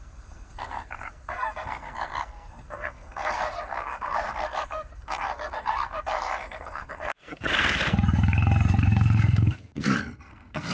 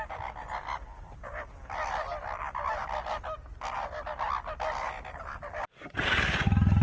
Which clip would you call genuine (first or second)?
second